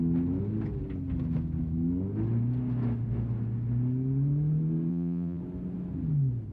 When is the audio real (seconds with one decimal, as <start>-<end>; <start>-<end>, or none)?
0.0-4.9; 5.4-6.5